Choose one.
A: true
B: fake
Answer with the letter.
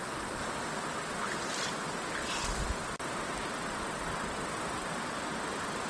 A